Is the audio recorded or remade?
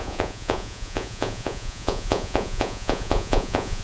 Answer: remade